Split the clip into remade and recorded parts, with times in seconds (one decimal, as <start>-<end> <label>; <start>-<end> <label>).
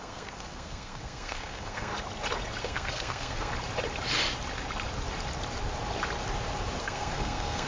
0.0-1.9 remade; 1.9-2.6 recorded; 2.6-3.5 remade; 3.5-6.8 recorded; 6.8-7.7 remade